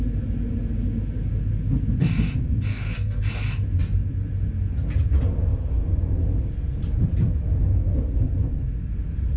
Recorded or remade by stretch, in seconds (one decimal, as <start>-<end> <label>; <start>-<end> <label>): 0.0-2.7 recorded; 2.7-3.2 remade; 3.2-9.4 recorded